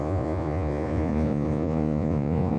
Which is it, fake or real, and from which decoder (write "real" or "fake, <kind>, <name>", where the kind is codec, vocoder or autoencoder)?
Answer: fake, vocoder, Vocos